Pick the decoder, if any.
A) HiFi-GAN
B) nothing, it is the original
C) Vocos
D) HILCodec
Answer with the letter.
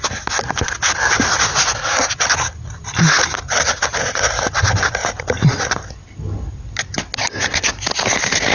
B